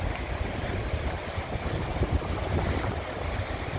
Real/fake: real